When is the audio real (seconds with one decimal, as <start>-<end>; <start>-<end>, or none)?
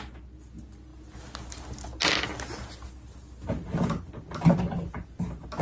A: 0.0-5.6